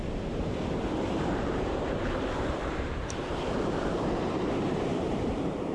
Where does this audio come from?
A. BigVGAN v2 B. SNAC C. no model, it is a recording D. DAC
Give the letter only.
A